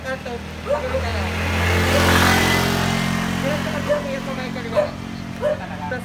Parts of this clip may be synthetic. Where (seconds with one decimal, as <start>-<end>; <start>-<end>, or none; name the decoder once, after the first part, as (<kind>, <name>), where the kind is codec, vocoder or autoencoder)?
none